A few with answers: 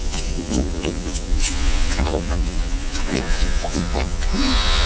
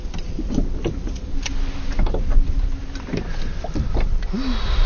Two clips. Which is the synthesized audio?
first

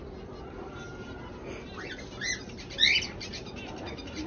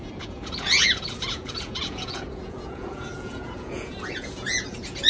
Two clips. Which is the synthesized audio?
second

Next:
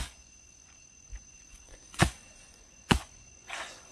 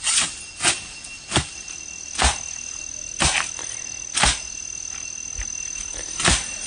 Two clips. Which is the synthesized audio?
first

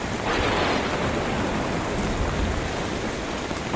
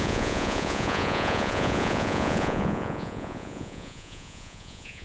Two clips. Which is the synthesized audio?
second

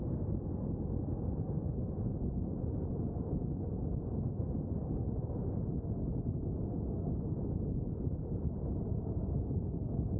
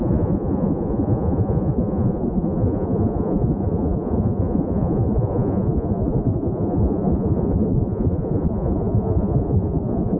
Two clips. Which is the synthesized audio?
second